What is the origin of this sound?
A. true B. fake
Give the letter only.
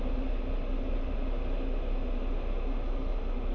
A